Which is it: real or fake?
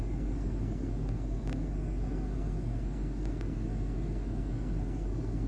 fake